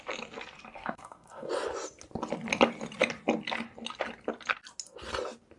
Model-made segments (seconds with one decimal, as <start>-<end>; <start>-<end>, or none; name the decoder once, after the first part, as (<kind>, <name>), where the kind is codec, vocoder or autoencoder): 0.8-1.5 (codec, SNAC)